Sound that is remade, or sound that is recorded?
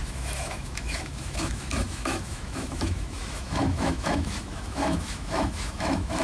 remade